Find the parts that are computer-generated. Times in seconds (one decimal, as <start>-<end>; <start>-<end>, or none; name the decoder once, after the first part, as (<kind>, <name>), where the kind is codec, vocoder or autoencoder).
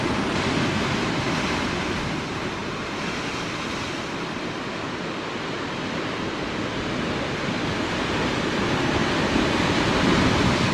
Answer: 2.6-4.6 (vocoder, BigVGAN v2); 9.0-10.7